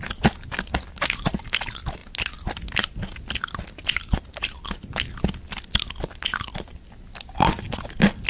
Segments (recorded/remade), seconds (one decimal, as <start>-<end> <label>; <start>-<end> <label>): 0.0-8.3 recorded